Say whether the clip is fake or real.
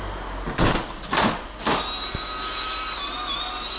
real